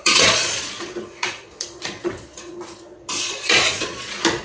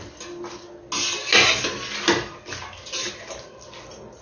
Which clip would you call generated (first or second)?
first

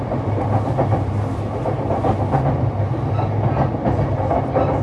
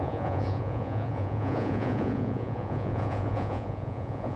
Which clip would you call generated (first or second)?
second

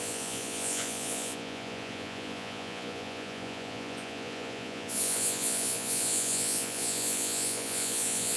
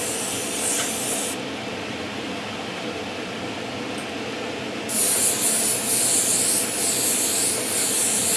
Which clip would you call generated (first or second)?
first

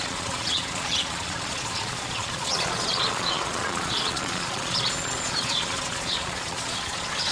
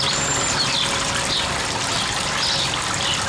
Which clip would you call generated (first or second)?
first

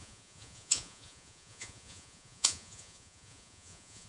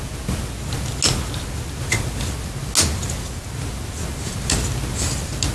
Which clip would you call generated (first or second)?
first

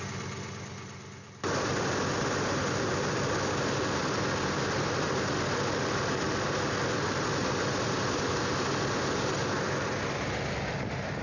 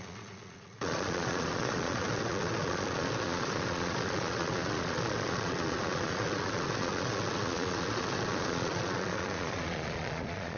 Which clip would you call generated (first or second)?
second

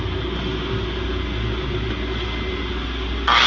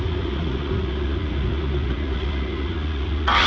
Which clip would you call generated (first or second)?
second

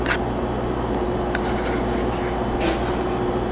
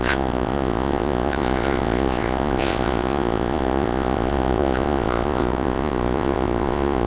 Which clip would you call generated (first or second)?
second